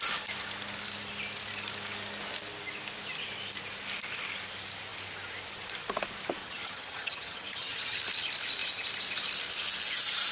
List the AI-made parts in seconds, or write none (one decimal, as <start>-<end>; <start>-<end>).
6.4-8.0